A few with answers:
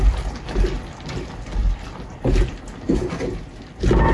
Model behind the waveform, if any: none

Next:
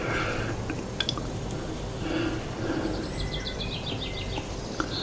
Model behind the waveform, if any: none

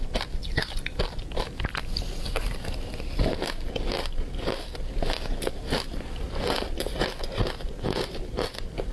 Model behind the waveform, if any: none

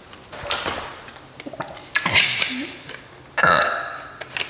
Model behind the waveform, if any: none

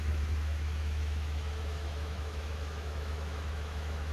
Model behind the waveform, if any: autoencoder, DAC-VAE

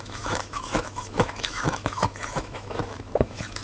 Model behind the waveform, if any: autoencoder, DAC-VAE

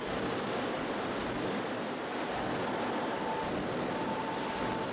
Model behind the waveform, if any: none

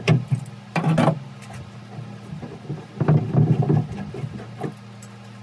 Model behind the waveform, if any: none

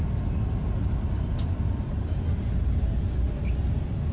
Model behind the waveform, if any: none